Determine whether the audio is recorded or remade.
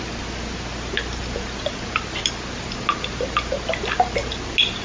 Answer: recorded